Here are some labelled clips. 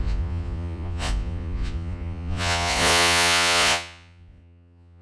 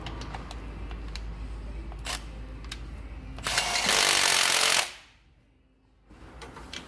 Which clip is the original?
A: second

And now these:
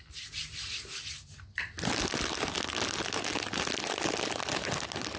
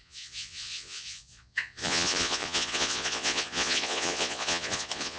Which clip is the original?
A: first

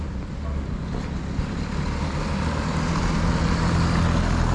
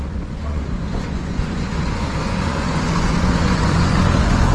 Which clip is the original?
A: first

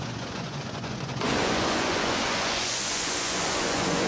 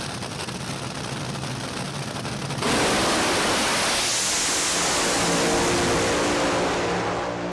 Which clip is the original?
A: second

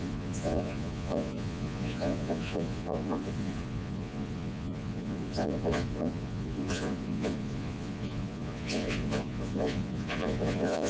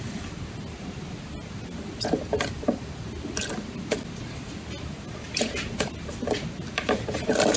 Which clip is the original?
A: second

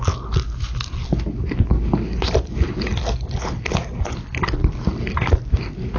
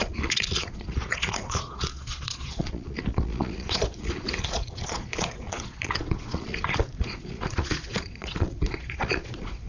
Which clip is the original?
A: first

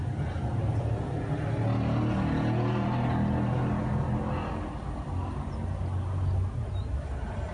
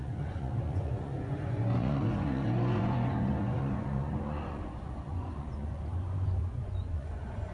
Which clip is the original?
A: first